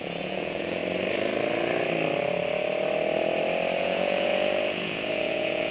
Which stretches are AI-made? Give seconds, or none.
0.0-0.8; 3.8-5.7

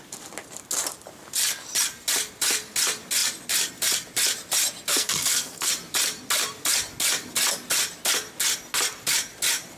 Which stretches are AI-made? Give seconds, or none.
4.9-5.7

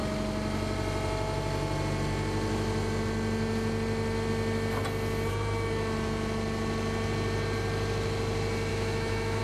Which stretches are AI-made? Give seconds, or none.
8.7-9.4

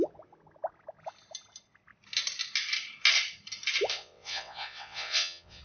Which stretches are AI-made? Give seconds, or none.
3.9-5.6

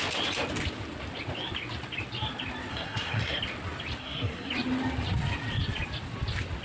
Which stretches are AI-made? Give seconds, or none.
2.7-3.4; 4.0-4.5

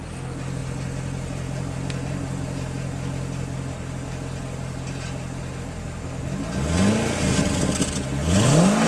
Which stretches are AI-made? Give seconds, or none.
none

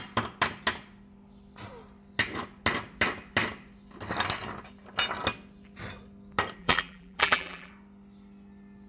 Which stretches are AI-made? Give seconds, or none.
6.6-7.7